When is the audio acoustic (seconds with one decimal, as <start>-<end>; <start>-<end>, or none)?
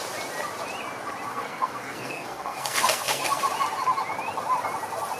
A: 0.0-1.3; 3.4-5.2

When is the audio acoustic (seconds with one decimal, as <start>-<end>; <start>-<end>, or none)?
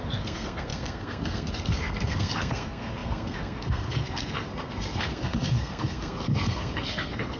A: none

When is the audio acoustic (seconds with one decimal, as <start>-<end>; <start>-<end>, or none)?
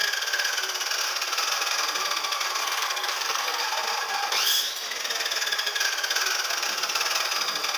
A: 0.0-2.6; 3.6-7.8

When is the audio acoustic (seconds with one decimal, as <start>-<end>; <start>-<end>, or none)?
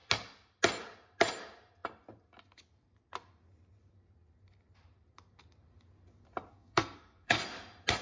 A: 0.0-6.5; 7.4-8.0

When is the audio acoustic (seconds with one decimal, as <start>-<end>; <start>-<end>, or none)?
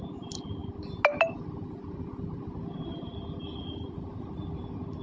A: 0.0-5.0